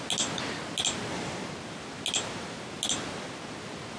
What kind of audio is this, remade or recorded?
recorded